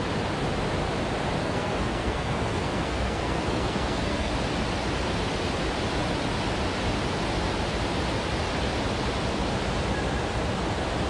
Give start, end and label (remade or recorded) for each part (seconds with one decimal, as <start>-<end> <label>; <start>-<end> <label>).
0.0-1.4 recorded; 1.4-4.3 remade; 4.3-11.1 recorded